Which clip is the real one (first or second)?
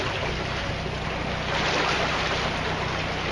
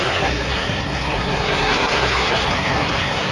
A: first